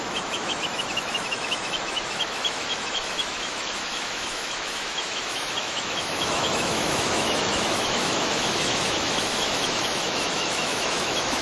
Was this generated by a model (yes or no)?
yes